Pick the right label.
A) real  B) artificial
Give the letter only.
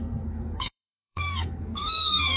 B